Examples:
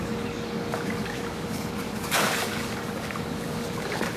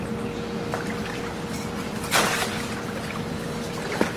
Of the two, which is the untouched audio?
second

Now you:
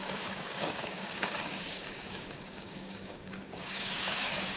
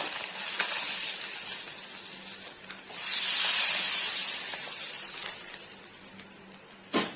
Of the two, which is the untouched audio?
second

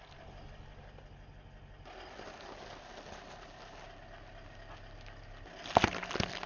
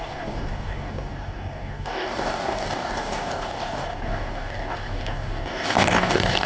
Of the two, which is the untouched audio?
first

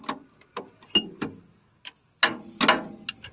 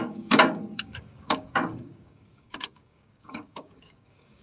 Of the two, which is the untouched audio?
first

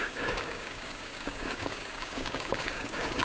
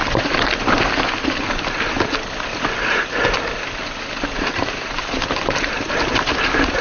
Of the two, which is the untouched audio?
second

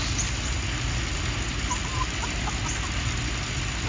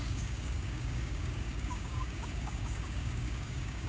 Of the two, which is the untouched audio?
first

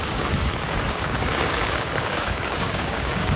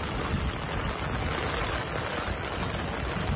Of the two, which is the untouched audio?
second